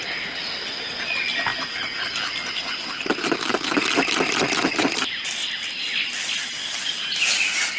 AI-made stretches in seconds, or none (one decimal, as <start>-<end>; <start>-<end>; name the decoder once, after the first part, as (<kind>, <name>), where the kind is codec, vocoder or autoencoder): none